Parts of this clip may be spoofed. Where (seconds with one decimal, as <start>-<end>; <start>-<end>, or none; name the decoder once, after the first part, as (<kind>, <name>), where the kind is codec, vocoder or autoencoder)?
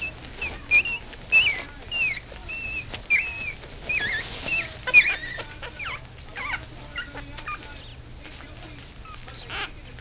none